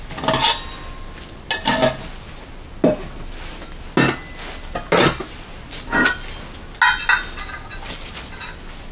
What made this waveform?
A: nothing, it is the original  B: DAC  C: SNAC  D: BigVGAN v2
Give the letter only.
A